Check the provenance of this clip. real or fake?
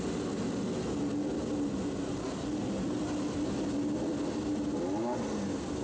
real